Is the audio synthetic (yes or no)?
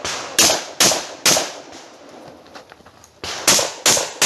no